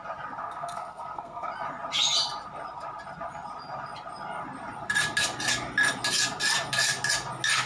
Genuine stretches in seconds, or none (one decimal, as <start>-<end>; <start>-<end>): 0.0-0.4; 1.5-7.7